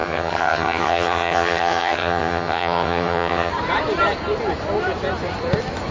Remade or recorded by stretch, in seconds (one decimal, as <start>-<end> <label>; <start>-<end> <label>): 0.0-3.5 remade; 3.5-5.9 recorded